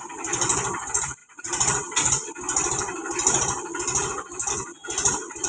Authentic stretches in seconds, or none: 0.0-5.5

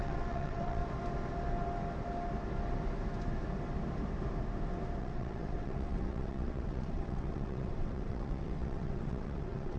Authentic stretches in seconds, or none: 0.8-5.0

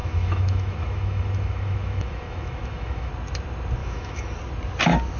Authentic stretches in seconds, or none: 3.1-3.8; 4.4-5.2

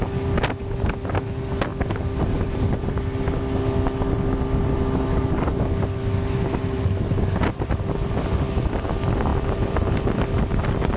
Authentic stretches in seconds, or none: 0.0-1.7; 3.0-11.0